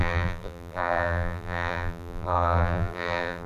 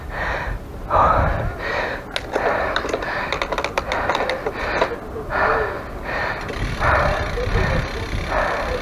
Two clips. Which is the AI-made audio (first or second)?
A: first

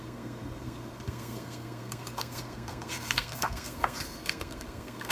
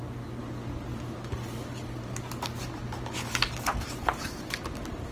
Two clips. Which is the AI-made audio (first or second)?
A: first